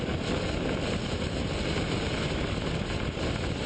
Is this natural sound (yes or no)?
yes